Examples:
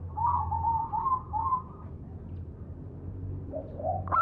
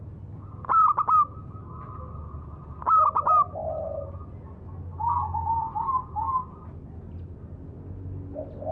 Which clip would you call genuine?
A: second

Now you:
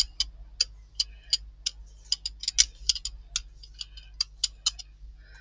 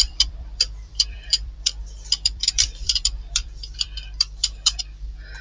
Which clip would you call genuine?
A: first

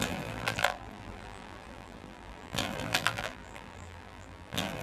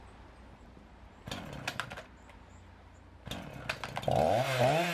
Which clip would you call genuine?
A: second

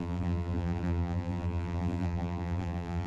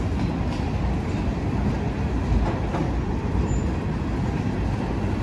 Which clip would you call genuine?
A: second